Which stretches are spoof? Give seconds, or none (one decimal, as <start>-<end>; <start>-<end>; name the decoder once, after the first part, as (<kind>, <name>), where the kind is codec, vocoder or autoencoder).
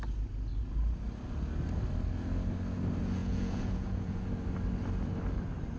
3.2-4.3 (vocoder, Vocos)